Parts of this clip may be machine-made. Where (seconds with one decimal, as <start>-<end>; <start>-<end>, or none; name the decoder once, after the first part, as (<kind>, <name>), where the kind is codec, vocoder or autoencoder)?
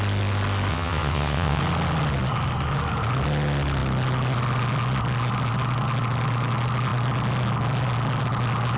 0.7-1.6 (vocoder, WaveNeXt)